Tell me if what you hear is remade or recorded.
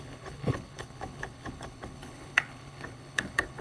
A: remade